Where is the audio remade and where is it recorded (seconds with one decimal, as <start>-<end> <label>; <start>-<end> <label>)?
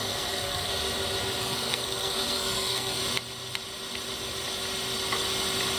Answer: 0.0-0.7 remade; 0.7-1.4 recorded; 1.4-3.0 remade; 3.0-5.8 recorded